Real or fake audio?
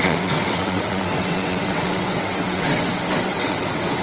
fake